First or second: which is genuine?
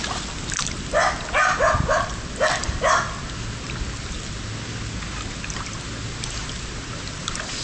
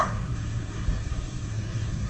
first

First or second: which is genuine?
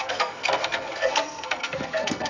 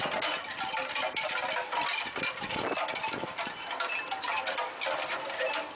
second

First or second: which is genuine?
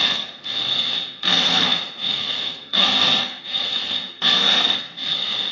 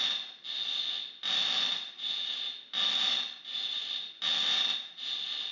second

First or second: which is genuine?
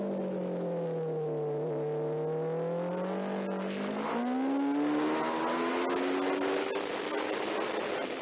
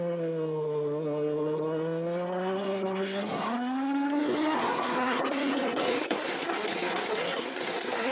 first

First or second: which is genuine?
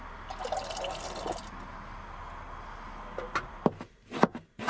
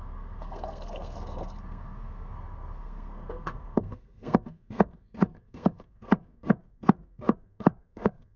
first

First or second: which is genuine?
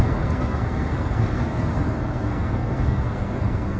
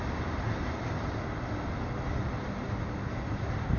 second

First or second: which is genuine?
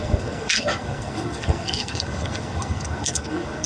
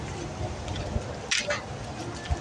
second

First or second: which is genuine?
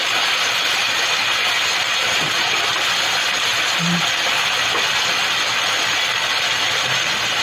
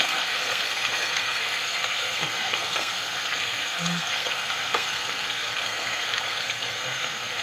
first